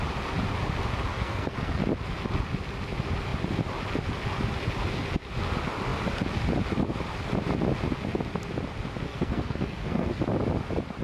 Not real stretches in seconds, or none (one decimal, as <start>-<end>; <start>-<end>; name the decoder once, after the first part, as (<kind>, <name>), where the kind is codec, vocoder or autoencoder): 1.1-1.8 (codec, SNAC); 9.1-10.2